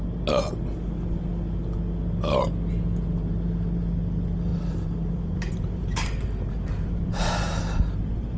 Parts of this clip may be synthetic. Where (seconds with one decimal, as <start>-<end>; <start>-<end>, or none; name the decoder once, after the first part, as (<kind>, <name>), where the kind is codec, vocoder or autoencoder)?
4.5-8.4 (vocoder, BigVGAN v2)